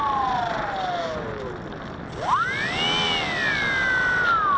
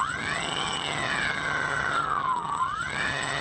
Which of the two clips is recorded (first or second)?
first